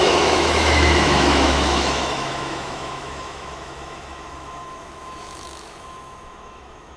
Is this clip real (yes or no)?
no